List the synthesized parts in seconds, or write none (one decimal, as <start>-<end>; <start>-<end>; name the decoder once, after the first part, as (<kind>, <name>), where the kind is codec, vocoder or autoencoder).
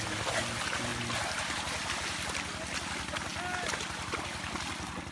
none